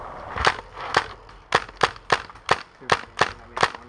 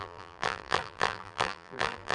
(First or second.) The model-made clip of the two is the second